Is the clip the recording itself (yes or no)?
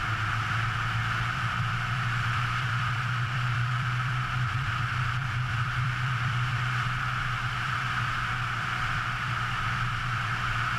no